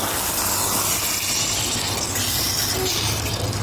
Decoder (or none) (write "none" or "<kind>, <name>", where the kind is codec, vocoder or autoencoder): none